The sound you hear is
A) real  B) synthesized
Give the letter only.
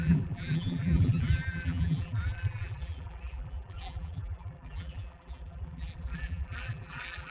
B